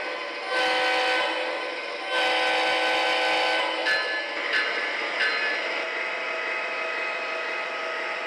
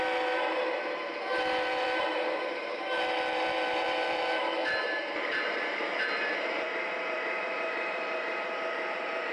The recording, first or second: first